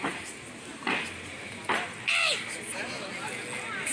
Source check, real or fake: real